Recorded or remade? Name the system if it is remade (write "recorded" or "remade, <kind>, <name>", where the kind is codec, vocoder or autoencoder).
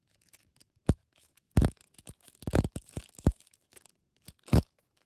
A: remade, autoencoder, DAC-VAE